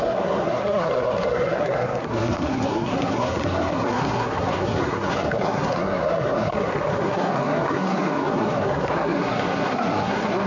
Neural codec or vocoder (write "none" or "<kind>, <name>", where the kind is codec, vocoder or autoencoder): codec, SNAC